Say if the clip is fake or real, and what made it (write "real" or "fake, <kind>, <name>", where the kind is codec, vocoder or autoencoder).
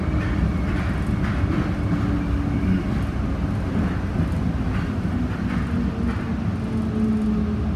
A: real